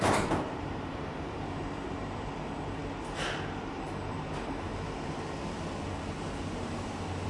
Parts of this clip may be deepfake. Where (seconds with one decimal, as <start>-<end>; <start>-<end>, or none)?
0.0-2.8; 4.1-4.7; 6.5-7.3